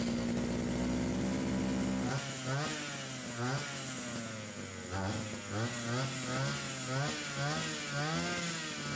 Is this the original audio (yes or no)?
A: yes